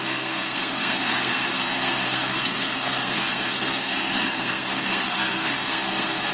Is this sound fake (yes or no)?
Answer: yes